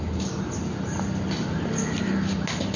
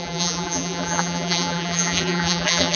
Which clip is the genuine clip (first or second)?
first